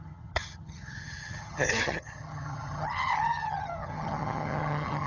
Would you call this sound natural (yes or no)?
no